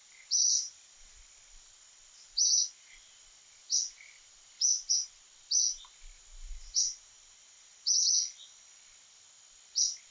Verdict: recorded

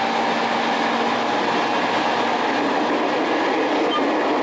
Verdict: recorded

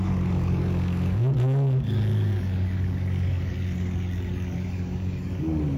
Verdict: remade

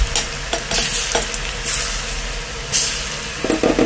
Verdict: recorded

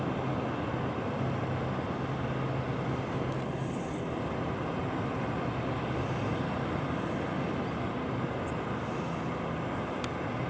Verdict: recorded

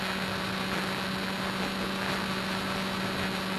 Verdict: recorded